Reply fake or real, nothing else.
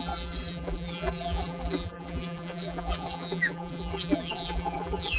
fake